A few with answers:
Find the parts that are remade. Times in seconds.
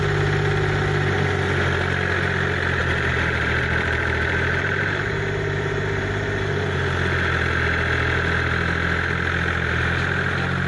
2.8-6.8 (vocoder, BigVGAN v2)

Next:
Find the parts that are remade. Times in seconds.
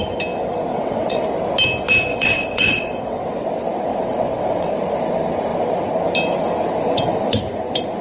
0.7-1.2 (vocoder, WaveNeXt); 2.1-3.5; 3.9-4.7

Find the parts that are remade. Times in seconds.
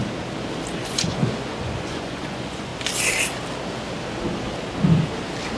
0.8-2.7 (vocoder, Vocos)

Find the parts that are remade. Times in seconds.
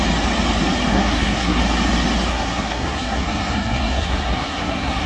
0.9-1.6 (codec, SNAC); 2.3-5.1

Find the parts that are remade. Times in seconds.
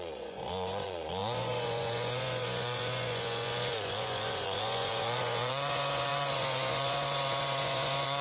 0.0-8.2 (vocoder, Vocos)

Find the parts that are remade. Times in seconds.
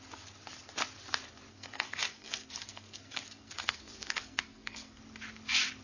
1.5-5.0 (codec, SNAC)